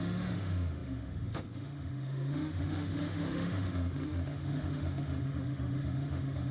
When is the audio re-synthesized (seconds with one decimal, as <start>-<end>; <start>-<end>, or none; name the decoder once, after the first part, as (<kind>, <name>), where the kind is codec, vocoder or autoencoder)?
0.0-6.5 (autoencoder, DAC-VAE)